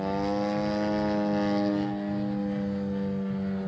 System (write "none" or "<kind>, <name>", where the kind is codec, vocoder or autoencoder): none